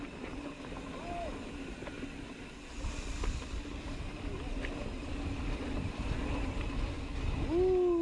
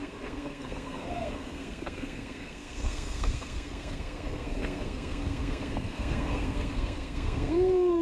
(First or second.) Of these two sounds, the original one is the first